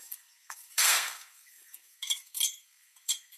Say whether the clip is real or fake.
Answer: fake